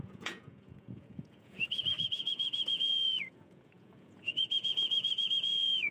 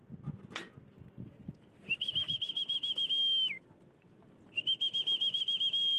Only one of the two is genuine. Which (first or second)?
second